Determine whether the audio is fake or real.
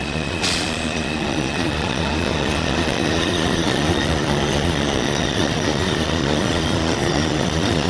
fake